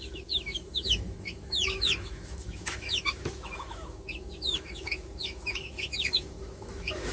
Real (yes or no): no